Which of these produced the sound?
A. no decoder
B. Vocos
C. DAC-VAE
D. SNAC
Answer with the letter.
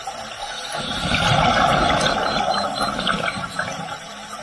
A